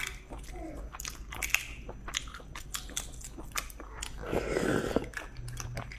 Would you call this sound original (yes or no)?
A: yes